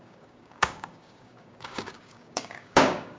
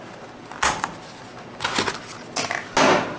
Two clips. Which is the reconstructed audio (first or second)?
first